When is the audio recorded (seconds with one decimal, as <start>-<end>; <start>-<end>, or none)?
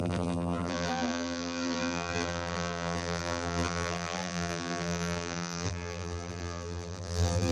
none